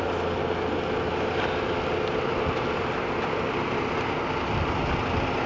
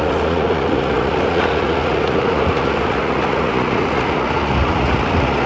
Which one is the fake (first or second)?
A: second